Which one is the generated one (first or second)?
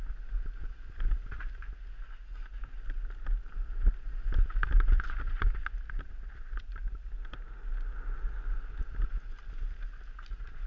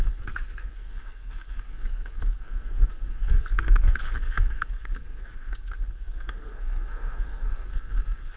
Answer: second